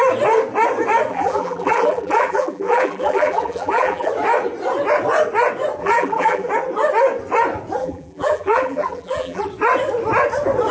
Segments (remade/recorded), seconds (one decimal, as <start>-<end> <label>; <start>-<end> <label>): 0.0-1.1 recorded; 1.1-4.1 remade; 4.1-5.8 recorded; 5.8-6.5 remade; 6.5-7.8 recorded; 7.8-9.5 remade; 9.5-10.7 recorded